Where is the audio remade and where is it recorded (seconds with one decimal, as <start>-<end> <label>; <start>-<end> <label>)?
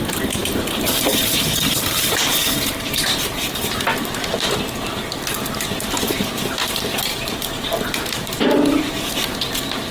0.0-0.4 recorded; 0.4-3.6 remade; 3.6-7.1 recorded; 7.1-8.8 remade; 8.8-9.9 recorded